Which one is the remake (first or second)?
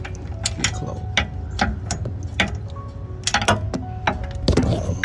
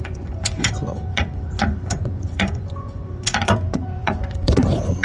second